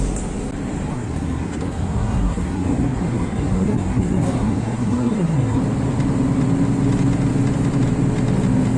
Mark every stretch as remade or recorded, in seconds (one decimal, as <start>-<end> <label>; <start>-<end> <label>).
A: 0.0-0.9 recorded; 0.9-5.6 remade; 5.6-8.8 recorded